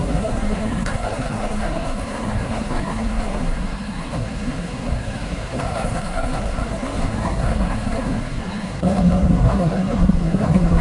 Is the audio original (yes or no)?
no